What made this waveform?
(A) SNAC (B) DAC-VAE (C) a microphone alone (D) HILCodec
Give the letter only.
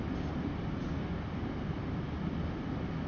C